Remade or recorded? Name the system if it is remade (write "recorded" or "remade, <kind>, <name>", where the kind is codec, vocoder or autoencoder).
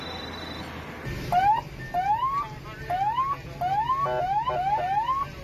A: recorded